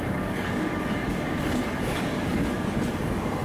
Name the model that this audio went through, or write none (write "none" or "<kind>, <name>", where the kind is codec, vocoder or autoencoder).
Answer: codec, DAC